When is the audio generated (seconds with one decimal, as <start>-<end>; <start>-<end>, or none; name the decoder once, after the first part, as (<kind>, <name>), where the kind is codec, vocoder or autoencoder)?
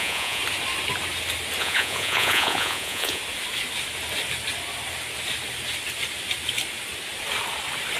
0.0-0.4 (vocoder, Vocos); 1.6-3.2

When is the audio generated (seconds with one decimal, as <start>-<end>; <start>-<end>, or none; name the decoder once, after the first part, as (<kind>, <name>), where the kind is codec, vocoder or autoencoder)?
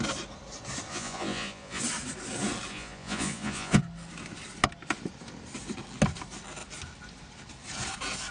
0.9-1.8 (vocoder, Vocos); 2.7-3.8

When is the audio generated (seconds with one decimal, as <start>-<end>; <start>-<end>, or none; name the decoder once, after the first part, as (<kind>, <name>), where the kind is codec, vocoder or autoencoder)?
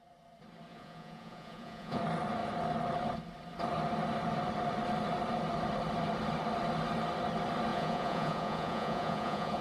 0.7-2.0 (vocoder, Vocos); 7.7-9.6